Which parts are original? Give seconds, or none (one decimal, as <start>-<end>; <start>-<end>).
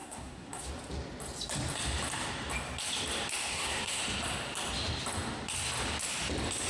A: 0.7-3.5; 4.0-6.7